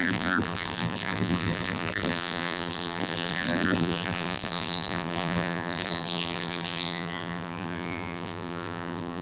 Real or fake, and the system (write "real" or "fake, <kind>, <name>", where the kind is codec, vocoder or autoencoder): fake, vocoder, BigVGAN v2